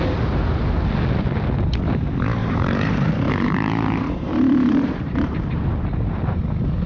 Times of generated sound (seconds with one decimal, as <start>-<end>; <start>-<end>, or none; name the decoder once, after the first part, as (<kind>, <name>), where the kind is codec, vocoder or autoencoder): 2.4-6.5 (vocoder, BigVGAN v2)